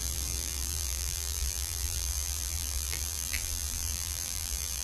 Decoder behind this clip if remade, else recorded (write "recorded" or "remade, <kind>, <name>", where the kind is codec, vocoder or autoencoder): remade, vocoder, BigVGAN v2